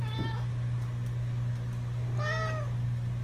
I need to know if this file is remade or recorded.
recorded